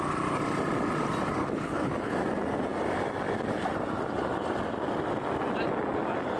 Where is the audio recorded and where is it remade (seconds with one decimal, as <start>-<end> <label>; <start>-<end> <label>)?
0.0-1.4 recorded; 1.4-2.1 remade; 2.1-6.4 recorded